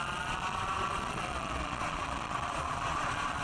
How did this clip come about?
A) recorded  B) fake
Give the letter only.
B